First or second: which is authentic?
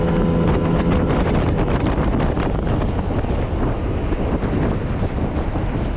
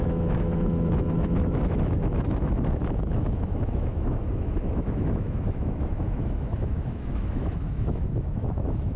first